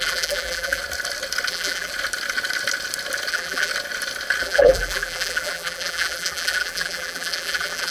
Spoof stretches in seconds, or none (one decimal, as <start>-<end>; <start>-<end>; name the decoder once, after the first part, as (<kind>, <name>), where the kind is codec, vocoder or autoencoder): 0.0-0.8 (vocoder, BigVGAN v2); 1.5-1.9; 3.3-3.7; 4.4-7.9

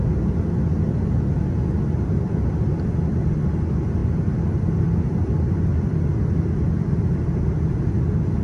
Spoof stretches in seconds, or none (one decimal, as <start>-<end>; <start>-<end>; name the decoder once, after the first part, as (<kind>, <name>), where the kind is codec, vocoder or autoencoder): none

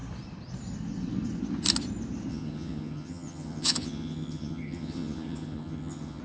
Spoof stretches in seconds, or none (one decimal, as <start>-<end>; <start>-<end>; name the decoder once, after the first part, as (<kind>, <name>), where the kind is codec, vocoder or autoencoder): 2.3-6.2 (vocoder, HiFi-GAN)

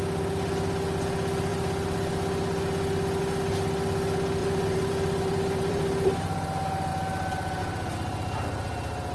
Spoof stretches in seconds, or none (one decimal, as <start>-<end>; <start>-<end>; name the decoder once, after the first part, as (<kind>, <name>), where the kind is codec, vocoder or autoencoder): 4.4-5.8 (vocoder, BigVGAN v2)

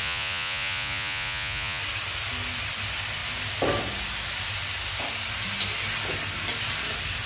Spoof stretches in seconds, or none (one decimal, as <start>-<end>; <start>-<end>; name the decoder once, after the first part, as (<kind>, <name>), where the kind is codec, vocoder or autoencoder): 0.0-1.8 (vocoder, Vocos)

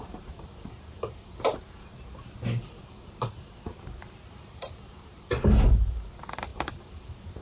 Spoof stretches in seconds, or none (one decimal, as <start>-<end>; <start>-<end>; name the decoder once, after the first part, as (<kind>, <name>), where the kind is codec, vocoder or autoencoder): 0.0-7.4 (vocoder, BigVGAN v2)

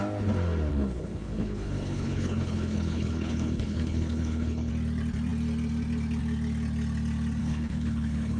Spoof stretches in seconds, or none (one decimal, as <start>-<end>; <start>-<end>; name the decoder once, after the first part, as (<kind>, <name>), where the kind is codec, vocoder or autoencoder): 0.7-4.7 (codec, HILCodec); 7.4-8.4